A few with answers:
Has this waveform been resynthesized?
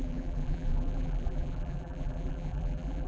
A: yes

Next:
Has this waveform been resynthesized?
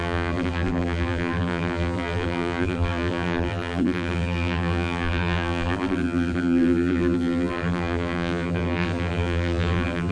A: yes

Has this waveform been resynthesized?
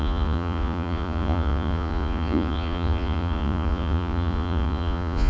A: yes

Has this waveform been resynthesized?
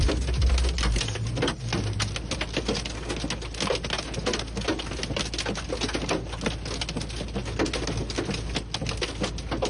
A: no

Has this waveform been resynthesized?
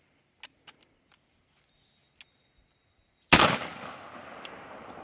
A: no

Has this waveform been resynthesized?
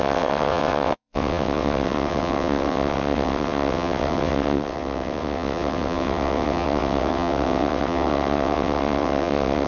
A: yes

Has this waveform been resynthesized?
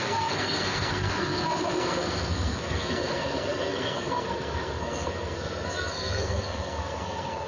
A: yes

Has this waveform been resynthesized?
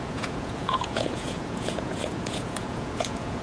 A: yes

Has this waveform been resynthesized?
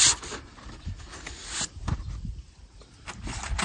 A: no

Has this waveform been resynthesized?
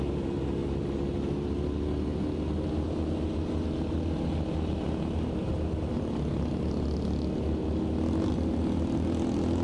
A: no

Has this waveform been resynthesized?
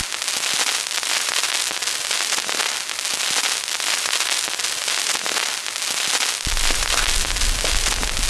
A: no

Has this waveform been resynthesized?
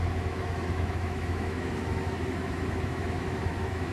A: yes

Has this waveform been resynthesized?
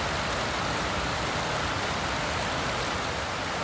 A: no